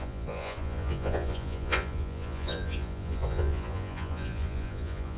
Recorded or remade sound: remade